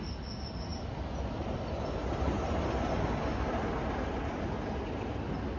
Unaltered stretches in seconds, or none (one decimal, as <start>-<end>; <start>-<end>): 0.0-5.6